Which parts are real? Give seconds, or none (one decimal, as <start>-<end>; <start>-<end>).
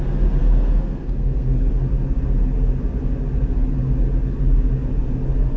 0.0-0.4; 1.7-5.6